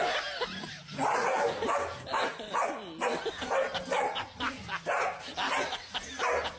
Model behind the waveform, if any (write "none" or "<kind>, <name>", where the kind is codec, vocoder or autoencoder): none